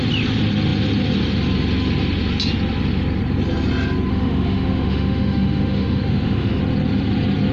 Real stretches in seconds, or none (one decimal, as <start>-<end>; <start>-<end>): 0.0-4.1; 6.6-7.5